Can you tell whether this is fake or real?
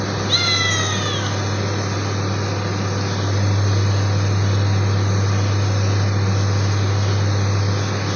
real